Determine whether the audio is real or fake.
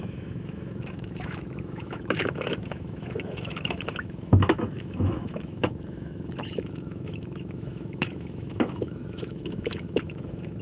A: fake